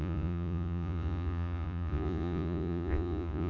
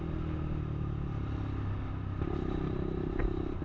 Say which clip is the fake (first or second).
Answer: first